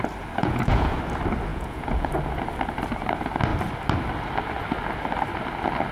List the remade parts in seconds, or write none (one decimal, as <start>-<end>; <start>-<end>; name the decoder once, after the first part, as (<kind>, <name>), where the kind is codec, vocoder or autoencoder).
0.4-1.0 (vocoder, Vocos); 1.5-2.1